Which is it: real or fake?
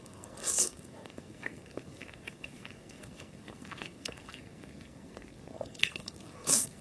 fake